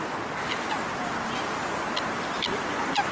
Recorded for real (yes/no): yes